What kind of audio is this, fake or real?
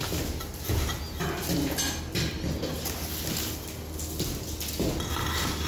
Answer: real